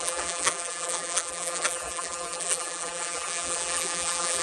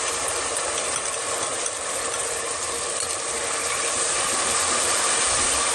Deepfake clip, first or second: first